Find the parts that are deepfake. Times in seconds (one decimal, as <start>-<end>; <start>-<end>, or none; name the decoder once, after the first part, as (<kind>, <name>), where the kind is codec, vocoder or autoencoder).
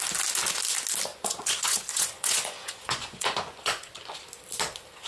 1.1-4.2 (vocoder, Vocos)